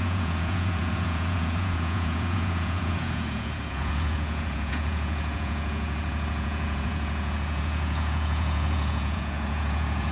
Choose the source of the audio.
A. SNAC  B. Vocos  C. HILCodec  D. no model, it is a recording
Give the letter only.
B